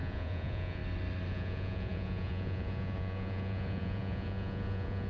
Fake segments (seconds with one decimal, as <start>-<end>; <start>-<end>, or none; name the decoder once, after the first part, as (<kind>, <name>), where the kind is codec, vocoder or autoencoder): 0.0-0.8 (vocoder, Vocos); 1.3-5.1